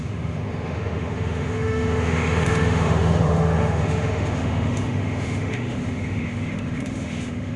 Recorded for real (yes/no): no